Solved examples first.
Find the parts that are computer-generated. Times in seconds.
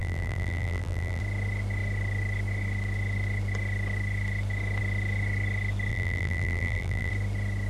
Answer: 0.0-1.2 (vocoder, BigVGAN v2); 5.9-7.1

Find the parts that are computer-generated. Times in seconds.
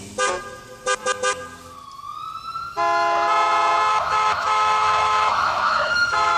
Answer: 3.9-6.4 (autoencoder, DAC-VAE)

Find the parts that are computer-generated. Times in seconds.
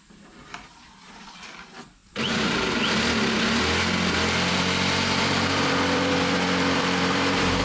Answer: 0.0-2.0 (vocoder, BigVGAN v2); 4.5-7.6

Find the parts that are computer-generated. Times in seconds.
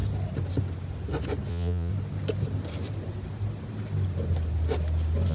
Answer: 1.5-1.9 (vocoder, Vocos)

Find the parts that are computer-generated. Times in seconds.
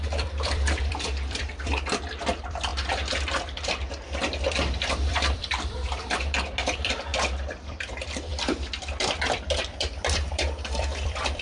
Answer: 0.0-2.7 (vocoder, BigVGAN v2); 4.8-8.3; 8.8-11.4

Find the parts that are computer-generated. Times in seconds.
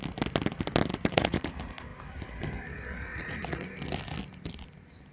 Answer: 0.9-1.5 (vocoder, Vocos); 3.1-3.7